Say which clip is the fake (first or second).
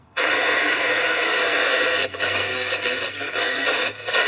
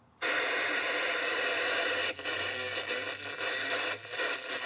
first